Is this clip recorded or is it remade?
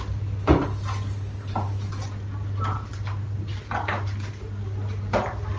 recorded